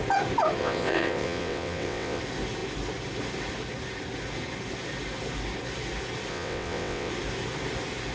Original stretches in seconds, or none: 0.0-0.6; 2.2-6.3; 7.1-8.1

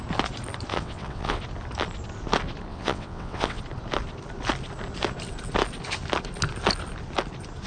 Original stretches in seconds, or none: 0.0-0.7; 1.4-2.7; 3.6-7.7

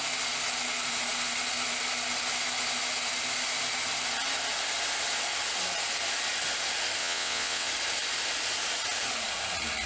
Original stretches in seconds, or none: 0.0-7.0; 7.7-9.9

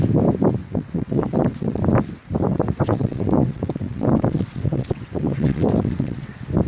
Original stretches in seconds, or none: 0.0-0.6; 1.8-2.5; 6.3-6.7

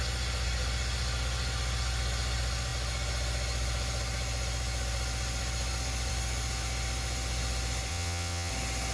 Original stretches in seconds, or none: 0.0-7.9; 8.5-8.9

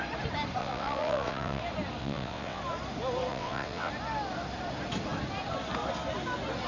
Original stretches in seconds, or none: 0.0-0.6; 1.6-2.0; 2.6-3.3; 3.9-6.7

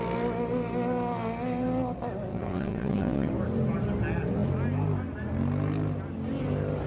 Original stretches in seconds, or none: 0.0-2.3; 3.3-6.9